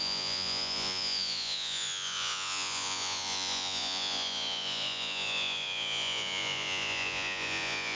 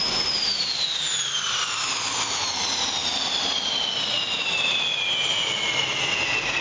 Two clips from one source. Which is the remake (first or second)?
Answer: first